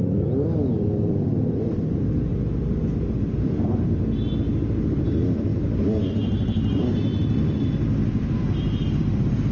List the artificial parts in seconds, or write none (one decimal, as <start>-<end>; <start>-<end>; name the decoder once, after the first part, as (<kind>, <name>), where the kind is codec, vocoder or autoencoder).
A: 0.0-2.3 (vocoder, BigVGAN v2); 3.3-4.2; 4.8-5.5; 6.1-9.5